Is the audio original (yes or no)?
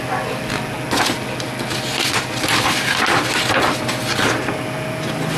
yes